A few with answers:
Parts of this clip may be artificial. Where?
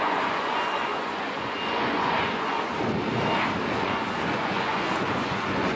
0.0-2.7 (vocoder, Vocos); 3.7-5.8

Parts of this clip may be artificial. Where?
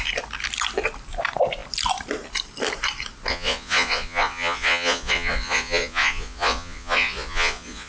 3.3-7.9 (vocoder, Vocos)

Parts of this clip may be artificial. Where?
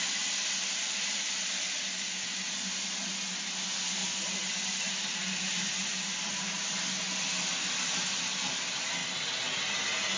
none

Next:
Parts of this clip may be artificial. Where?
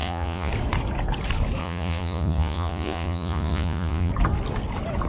0.0-0.5 (vocoder, Vocos); 1.6-4.1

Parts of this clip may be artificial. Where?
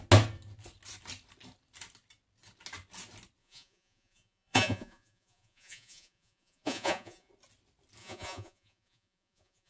3.4-7.3 (vocoder, Vocos); 8.0-9.7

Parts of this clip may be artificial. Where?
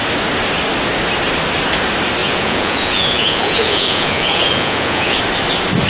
2.2-5.2 (vocoder, Vocos)